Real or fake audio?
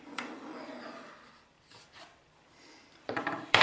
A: fake